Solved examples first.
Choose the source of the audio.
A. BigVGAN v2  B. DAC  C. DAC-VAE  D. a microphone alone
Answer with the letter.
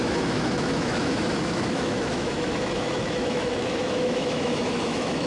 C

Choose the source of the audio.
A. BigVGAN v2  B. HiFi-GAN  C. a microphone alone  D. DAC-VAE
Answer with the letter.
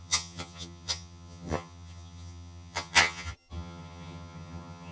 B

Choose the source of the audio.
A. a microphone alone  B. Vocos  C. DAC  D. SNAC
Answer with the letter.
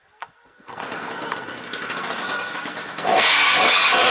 D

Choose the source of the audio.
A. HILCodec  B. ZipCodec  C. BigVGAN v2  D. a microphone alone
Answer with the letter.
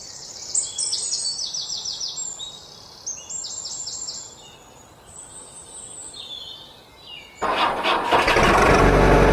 D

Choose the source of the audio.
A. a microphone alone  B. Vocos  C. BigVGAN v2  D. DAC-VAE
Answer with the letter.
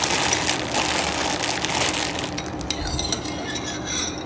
A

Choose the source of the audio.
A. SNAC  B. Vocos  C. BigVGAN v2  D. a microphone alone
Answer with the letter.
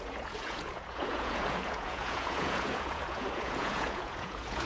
B